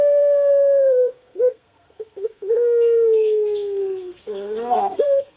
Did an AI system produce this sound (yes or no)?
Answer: yes